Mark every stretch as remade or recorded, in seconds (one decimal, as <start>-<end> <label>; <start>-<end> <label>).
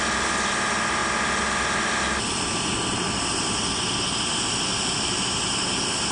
0.0-6.1 recorded